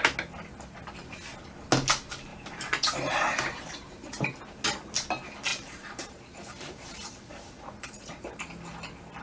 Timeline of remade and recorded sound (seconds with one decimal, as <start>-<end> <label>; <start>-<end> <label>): 0.0-2.3 recorded; 2.3-4.3 remade; 4.3-5.5 recorded; 5.5-8.5 remade; 8.5-9.2 recorded